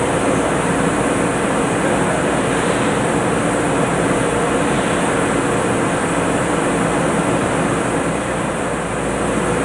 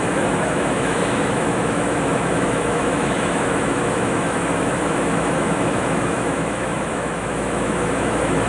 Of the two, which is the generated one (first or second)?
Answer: second